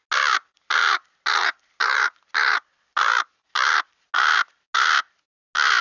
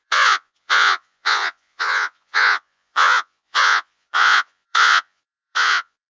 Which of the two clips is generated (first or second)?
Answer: second